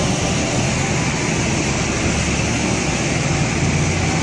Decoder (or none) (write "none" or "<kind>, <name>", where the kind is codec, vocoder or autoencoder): none